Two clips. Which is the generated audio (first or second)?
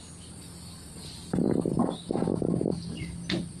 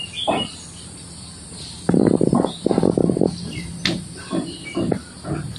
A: second